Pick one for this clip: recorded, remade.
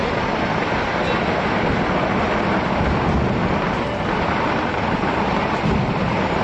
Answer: recorded